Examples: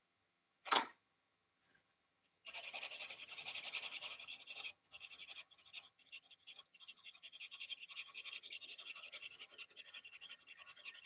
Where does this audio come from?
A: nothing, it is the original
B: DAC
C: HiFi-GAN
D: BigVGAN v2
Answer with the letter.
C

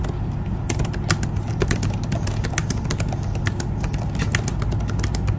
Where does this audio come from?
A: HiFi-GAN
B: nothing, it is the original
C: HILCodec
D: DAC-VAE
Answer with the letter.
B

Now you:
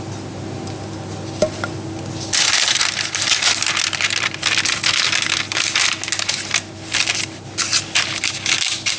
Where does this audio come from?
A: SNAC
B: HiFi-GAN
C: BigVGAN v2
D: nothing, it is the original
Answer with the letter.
D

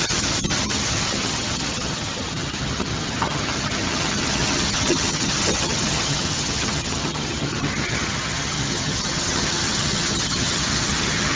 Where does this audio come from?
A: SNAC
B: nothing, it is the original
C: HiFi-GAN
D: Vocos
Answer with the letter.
C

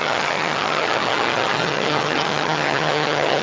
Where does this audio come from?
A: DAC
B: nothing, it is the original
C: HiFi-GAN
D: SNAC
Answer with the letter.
C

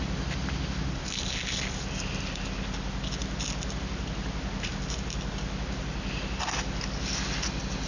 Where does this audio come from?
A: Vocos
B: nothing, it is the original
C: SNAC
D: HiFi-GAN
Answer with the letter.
B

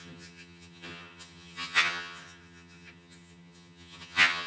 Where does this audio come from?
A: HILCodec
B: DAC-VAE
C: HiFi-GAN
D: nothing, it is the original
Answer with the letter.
C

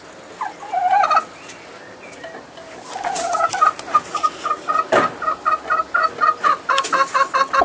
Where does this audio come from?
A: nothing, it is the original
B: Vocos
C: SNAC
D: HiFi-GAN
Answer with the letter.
A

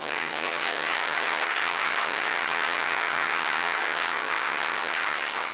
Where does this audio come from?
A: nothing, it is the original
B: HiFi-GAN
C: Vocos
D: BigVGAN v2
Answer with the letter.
B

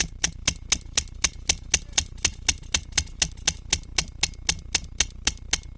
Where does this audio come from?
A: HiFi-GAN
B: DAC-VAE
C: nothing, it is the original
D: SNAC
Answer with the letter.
C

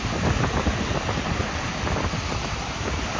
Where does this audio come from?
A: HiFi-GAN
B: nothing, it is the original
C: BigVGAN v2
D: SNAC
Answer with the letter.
B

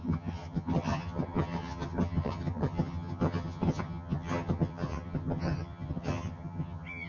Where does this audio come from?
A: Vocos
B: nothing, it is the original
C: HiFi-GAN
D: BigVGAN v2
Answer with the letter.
C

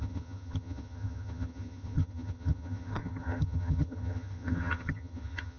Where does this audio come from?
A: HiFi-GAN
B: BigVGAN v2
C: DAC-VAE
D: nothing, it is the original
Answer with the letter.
A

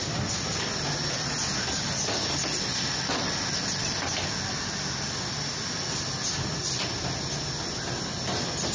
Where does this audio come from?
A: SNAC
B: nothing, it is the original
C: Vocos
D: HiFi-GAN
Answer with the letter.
B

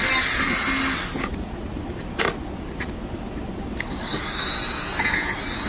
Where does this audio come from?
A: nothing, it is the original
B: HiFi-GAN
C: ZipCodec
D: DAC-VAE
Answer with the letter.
A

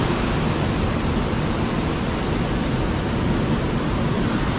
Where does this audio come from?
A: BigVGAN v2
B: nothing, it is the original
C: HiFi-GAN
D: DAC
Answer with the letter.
B